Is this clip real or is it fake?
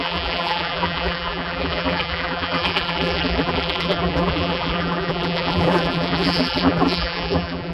fake